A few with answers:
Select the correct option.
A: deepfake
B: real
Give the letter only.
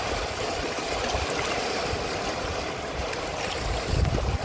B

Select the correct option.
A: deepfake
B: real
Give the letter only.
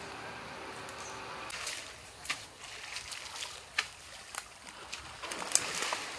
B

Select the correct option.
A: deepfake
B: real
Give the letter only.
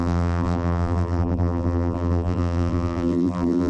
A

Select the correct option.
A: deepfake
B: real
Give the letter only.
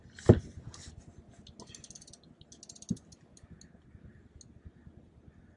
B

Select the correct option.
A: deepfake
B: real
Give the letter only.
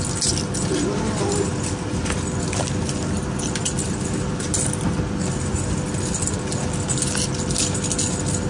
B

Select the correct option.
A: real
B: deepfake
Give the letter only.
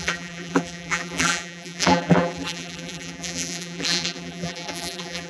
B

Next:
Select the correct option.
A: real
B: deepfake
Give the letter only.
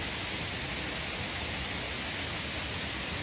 A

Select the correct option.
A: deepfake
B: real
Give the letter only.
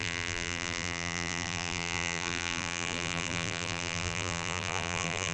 A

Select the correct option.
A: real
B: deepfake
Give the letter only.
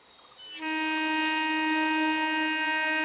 A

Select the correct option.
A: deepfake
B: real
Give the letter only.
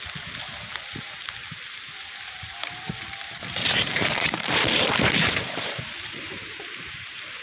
A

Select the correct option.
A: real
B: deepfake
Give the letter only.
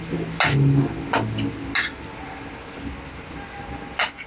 A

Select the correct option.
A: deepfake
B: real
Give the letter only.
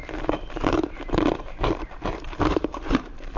A